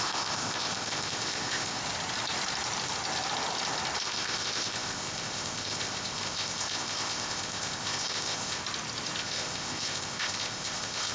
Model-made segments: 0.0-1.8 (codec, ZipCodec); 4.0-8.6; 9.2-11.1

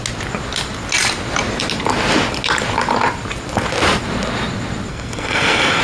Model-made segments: 4.9-5.8 (codec, SNAC)